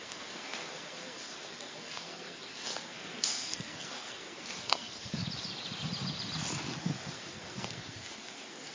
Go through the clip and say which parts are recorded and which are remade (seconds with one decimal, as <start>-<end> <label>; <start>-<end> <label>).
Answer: 0.0-5.2 remade; 5.2-6.8 recorded; 6.8-8.7 remade